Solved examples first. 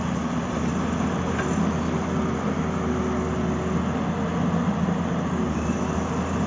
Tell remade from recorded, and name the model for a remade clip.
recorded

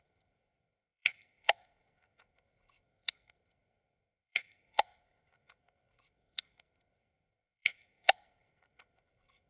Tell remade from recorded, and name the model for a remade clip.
remade, codec, SNAC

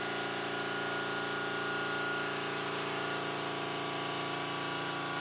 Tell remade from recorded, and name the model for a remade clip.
recorded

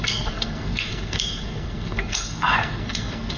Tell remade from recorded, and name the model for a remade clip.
remade, codec, SNAC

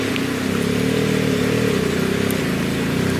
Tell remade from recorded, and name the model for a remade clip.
recorded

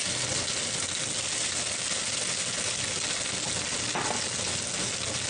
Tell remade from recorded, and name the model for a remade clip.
recorded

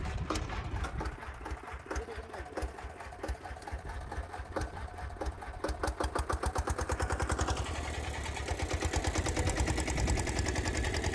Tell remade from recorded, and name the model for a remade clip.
recorded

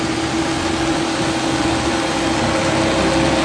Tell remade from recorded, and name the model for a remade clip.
recorded